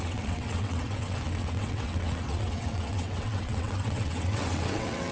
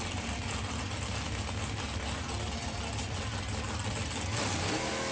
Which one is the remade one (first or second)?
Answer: first